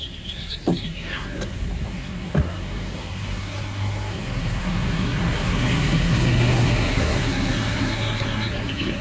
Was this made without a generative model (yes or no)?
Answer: no